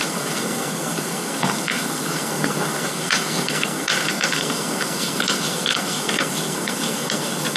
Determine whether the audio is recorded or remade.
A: remade